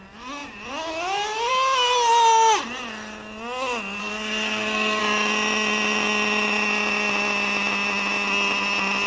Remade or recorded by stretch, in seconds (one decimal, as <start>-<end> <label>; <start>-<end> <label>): 0.0-4.0 recorded; 4.0-5.0 remade; 5.0-9.1 recorded